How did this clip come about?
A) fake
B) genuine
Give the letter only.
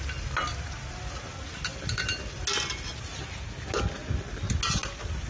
B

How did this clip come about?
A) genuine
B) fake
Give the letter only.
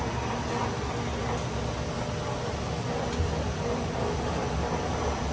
A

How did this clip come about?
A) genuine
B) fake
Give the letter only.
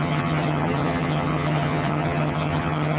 B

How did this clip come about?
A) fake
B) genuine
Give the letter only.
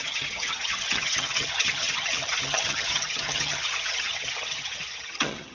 A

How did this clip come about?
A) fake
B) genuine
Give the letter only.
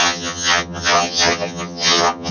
A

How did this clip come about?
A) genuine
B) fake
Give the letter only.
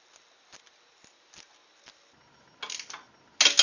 A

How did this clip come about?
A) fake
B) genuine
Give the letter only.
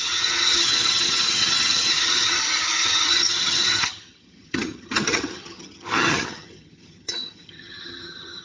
A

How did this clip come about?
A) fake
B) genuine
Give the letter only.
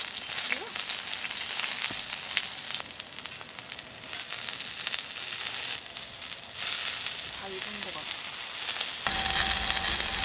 B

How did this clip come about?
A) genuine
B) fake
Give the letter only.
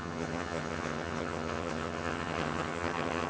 B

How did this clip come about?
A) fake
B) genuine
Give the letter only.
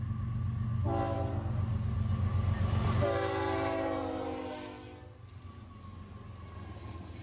B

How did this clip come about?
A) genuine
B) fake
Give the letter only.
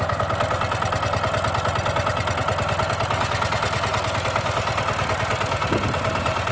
A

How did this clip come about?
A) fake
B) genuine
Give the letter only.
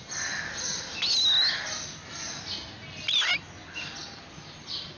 B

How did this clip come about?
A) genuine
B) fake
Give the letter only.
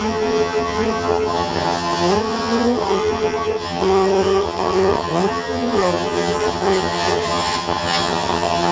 B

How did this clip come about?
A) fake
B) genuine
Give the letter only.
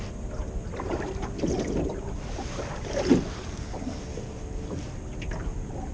B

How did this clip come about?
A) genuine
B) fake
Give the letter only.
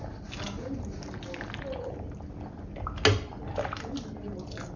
A